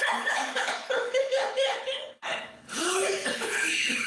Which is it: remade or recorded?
remade